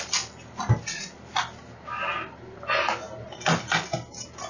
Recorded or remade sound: recorded